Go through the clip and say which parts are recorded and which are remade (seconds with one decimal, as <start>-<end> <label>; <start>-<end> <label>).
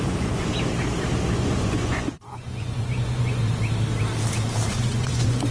0.0-0.5 remade; 0.5-1.3 recorded; 1.3-3.4 remade; 3.4-4.7 recorded; 4.7-5.5 remade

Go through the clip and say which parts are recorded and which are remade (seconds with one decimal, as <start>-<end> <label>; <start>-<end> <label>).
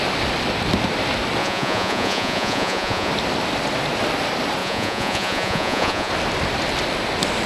0.0-1.4 recorded; 1.4-3.1 remade; 3.1-4.6 recorded; 4.6-6.1 remade; 6.1-7.5 recorded